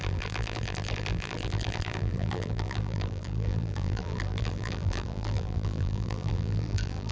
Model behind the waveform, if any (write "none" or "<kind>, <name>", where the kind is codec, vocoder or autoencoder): vocoder, BigVGAN v2